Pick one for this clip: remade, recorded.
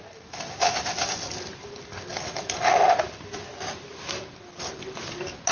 recorded